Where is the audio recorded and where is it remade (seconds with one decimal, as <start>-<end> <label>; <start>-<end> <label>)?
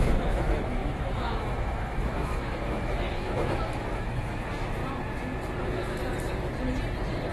0.0-4.8 remade; 4.8-5.6 recorded; 5.6-6.0 remade; 6.0-7.3 recorded